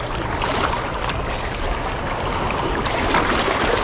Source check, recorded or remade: recorded